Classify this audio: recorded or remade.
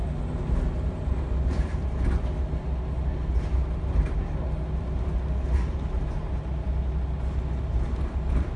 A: recorded